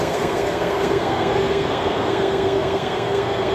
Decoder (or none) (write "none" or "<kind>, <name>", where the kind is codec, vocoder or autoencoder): codec, SNAC